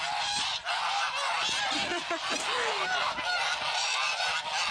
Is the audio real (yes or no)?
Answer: yes